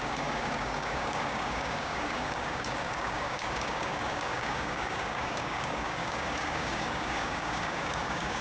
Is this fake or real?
fake